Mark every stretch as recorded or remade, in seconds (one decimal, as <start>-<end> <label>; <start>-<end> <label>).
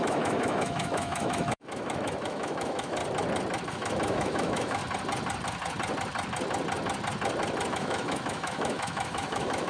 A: 0.0-3.0 remade; 3.0-3.7 recorded; 3.7-4.8 remade; 4.8-7.7 recorded; 7.7-9.7 remade